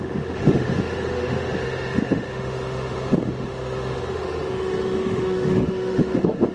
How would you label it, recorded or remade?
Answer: remade